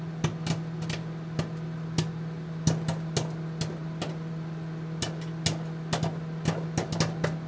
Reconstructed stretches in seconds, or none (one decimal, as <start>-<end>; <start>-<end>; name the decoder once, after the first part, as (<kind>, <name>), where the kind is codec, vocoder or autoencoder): none

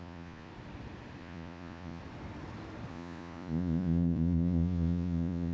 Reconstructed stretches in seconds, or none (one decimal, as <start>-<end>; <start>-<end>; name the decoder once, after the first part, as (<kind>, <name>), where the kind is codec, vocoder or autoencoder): 0.0-0.5 (vocoder, Vocos); 1.2-2.0; 2.9-5.5

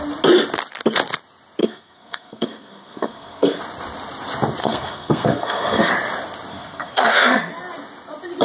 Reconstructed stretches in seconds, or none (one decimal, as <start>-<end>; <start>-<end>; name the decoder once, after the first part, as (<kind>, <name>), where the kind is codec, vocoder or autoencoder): 1.6-3.6 (codec, SNAC); 4.6-5.9; 6.5-7.5

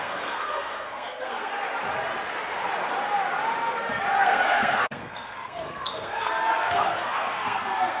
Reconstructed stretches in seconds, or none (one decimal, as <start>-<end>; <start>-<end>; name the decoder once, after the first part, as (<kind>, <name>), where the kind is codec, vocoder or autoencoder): 0.0-1.5 (codec, SNAC); 4.2-8.0

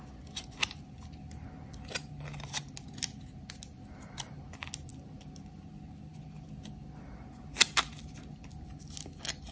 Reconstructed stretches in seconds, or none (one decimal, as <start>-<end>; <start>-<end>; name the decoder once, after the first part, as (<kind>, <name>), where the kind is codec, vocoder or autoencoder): none

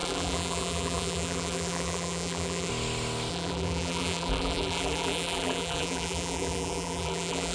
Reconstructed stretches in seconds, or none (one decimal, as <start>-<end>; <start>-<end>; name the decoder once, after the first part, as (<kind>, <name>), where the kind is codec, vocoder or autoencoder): 0.0-2.7 (vocoder, BigVGAN v2); 3.3-7.5

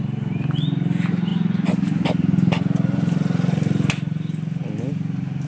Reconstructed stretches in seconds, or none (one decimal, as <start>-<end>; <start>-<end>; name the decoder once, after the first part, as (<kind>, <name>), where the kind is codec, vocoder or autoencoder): none